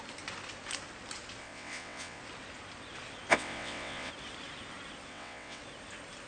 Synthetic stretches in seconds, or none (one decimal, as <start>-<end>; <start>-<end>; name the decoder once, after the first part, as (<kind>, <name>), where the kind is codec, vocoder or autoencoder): 1.4-2.2 (vocoder, WaveNeXt); 3.3-4.1; 5.1-5.6